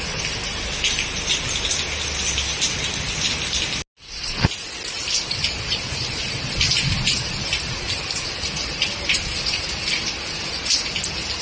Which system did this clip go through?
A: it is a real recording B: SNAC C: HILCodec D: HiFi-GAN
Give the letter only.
A